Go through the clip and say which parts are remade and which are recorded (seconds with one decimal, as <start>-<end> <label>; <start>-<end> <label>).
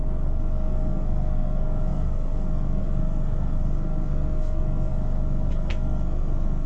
0.0-6.7 remade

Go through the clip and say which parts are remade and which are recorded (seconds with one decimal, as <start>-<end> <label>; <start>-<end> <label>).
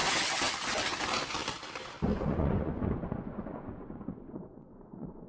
0.0-2.1 recorded; 2.1-5.3 remade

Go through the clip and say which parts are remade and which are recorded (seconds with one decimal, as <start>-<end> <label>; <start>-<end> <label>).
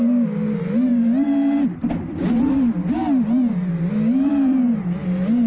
0.0-5.5 recorded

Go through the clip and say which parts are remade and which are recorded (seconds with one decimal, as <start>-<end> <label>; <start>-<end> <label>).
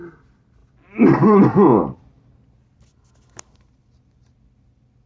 0.0-5.1 recorded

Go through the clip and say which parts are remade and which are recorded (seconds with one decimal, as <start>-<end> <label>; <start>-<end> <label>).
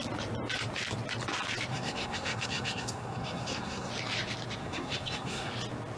0.0-1.7 recorded; 1.7-3.9 remade; 3.9-4.6 recorded; 4.6-5.5 remade; 5.5-6.0 recorded